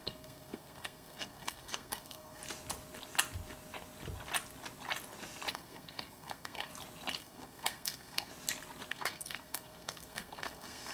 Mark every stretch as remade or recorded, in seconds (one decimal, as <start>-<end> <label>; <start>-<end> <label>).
0.0-2.4 remade; 2.4-5.5 recorded; 5.5-6.7 remade; 6.7-7.2 recorded; 7.2-8.3 remade; 8.3-8.9 recorded; 8.9-10.9 remade